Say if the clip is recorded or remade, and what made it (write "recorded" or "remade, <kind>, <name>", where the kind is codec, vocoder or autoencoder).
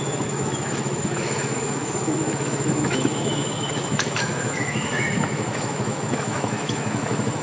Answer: remade, autoencoder, DAC-VAE